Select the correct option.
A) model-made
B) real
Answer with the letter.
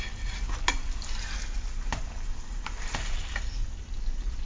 B